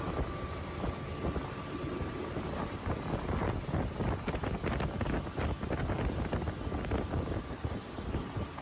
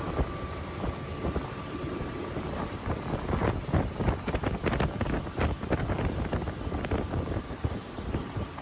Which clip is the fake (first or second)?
second